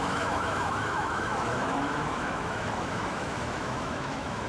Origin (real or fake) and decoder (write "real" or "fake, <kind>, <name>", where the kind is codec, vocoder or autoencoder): fake, autoencoder, DAC-VAE